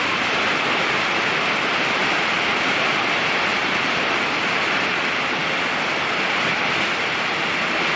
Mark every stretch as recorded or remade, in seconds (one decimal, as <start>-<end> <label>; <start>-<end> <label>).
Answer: 0.0-2.0 recorded; 2.0-2.9 remade; 2.9-3.5 recorded; 3.5-4.4 remade; 4.4-8.0 recorded